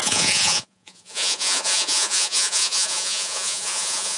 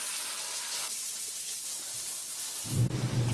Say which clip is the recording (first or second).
second